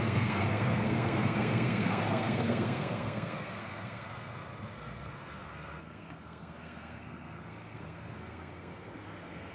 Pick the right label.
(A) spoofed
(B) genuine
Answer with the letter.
A